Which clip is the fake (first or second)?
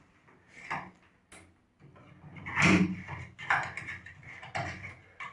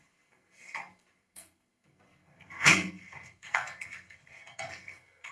second